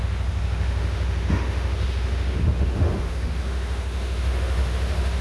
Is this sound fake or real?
fake